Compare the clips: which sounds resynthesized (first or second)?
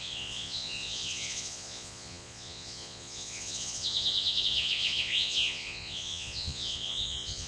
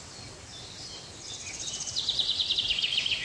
first